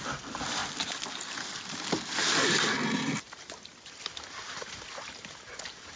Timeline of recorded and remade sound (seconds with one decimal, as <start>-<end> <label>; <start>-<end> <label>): 0.0-0.6 remade; 0.6-3.9 recorded; 3.9-6.0 remade